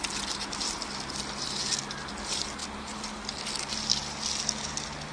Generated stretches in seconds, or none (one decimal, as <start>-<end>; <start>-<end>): none